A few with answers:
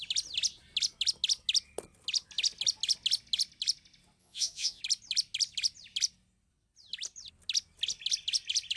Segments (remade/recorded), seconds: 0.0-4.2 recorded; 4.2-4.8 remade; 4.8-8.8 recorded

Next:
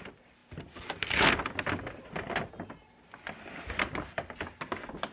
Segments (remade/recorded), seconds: 0.0-5.1 recorded

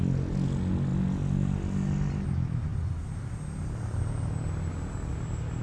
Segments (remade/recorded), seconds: 0.0-5.6 recorded

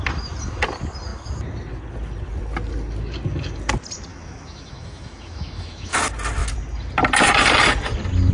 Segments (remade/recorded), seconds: 0.0-4.1 recorded; 4.1-6.0 remade; 6.0-8.3 recorded